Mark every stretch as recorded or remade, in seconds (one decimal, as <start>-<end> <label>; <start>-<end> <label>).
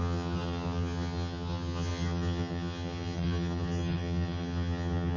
0.0-5.2 remade